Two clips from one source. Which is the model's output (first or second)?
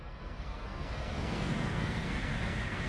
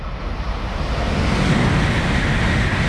first